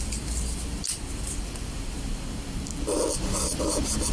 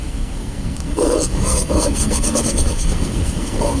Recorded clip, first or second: first